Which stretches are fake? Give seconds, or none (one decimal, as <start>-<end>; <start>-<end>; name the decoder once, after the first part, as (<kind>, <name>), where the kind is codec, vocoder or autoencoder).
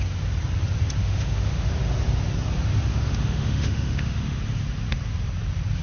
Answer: 1.0-1.7 (autoencoder, DAC-VAE); 2.9-4.4